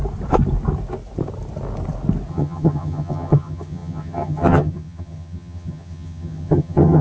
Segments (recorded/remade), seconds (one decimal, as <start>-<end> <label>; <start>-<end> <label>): 0.0-2.3 recorded; 2.3-7.0 remade